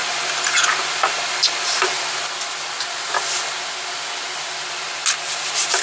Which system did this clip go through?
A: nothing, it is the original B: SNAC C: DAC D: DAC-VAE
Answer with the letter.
A